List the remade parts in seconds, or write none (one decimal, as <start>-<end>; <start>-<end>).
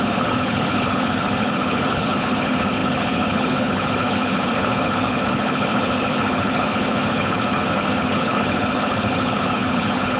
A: 0.0-10.2